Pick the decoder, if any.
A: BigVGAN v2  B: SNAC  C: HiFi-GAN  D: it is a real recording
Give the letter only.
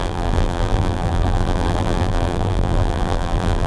A